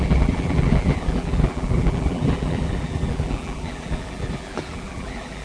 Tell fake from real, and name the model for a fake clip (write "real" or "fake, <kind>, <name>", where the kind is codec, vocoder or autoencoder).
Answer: fake, vocoder, BigVGAN v2